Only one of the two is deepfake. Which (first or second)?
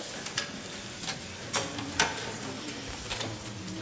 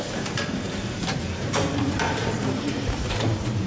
second